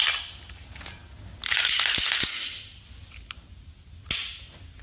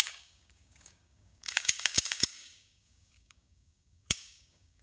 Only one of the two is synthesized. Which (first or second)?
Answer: second